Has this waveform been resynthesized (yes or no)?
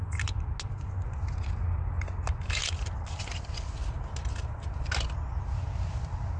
no